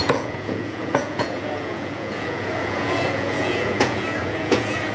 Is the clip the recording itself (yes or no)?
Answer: no